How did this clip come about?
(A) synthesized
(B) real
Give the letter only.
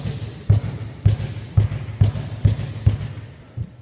B